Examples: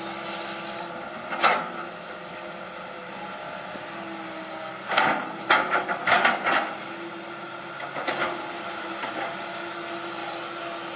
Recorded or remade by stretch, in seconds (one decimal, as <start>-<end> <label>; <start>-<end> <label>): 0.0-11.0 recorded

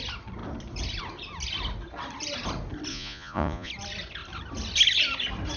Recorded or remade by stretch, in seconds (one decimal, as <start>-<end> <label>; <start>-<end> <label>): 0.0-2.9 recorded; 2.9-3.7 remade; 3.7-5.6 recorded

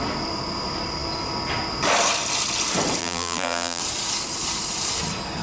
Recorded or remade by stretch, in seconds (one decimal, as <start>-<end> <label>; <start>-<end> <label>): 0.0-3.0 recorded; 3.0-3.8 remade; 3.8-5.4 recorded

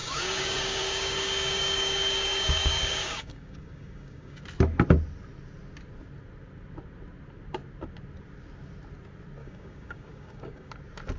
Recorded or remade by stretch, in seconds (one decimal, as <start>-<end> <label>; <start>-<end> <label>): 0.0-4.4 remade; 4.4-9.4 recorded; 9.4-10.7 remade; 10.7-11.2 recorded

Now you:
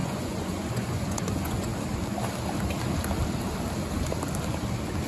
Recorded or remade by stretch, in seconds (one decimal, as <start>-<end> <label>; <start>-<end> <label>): 0.0-1.7 remade; 1.7-5.1 recorded